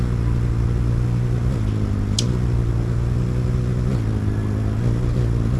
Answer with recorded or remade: recorded